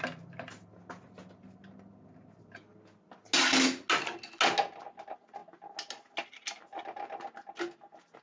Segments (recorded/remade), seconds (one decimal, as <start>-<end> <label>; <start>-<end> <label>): 0.0-8.2 recorded